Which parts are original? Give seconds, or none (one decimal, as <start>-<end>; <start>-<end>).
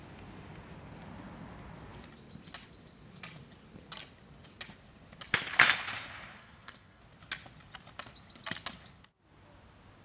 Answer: 0.0-6.4; 7.0-10.0